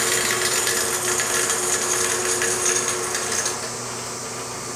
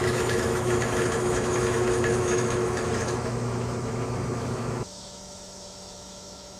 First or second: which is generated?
second